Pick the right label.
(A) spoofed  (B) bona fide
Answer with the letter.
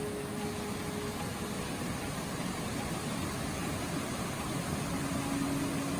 B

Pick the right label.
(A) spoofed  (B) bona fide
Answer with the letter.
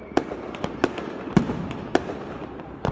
A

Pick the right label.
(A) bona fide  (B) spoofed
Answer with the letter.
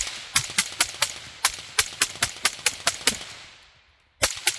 A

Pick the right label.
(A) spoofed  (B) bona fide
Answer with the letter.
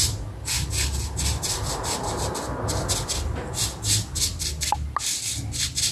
B